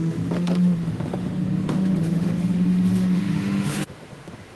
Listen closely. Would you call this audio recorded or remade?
remade